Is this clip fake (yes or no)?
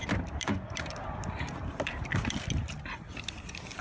yes